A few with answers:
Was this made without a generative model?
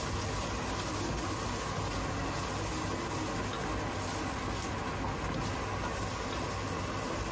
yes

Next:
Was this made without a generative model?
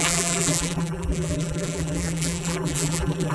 no